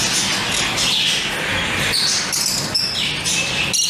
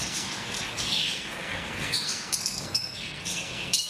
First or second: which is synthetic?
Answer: second